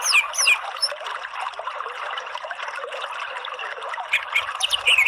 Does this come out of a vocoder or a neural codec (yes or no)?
no